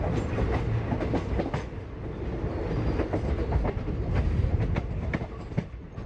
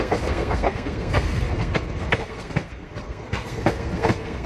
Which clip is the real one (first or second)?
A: first